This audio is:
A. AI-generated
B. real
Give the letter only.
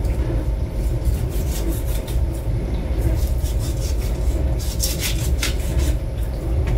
A